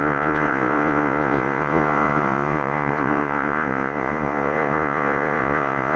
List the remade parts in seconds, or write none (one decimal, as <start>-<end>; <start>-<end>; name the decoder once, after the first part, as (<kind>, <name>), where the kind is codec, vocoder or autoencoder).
0.0-6.0 (vocoder, Vocos)